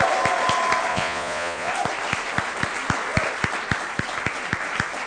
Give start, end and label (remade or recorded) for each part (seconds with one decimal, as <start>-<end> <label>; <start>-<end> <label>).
0.0-0.9 recorded; 0.9-1.7 remade; 1.7-5.1 recorded